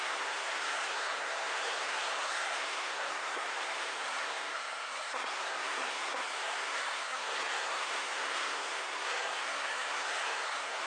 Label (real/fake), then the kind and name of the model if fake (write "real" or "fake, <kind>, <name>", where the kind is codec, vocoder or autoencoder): fake, codec, SNAC